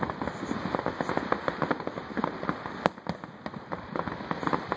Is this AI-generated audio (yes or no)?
no